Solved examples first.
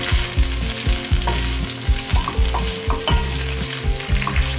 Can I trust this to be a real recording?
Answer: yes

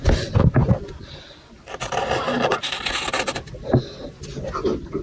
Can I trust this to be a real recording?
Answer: yes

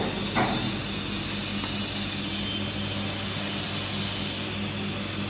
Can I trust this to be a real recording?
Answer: yes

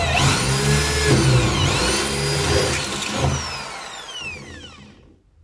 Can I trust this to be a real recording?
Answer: yes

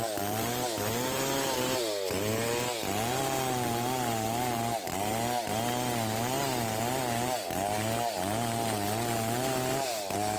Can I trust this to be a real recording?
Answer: yes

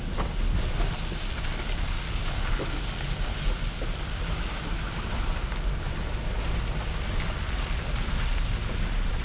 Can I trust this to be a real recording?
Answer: yes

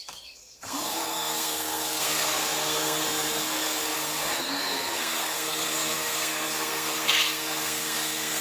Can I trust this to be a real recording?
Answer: no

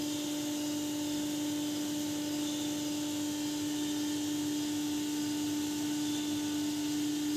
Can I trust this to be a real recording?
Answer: yes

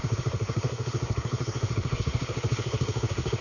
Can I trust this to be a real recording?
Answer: no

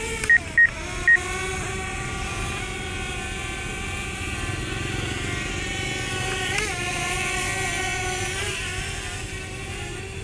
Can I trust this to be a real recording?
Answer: yes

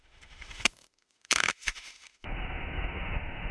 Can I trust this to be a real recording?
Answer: no